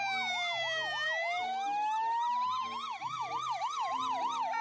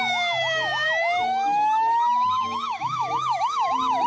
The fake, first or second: second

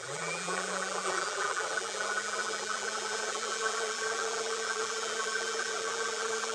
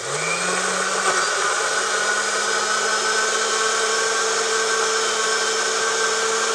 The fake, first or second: first